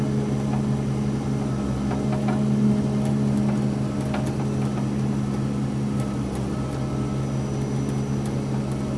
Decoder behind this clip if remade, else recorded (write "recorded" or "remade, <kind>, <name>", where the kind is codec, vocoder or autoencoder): recorded